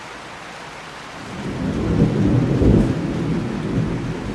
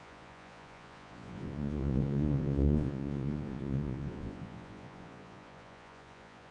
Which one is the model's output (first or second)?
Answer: second